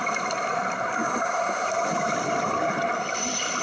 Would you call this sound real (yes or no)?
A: no